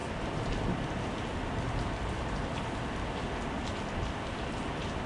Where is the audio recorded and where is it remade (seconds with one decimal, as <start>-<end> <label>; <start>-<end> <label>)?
0.0-5.1 recorded